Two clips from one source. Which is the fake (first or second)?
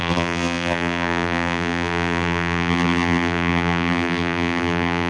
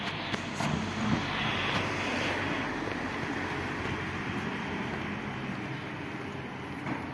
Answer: first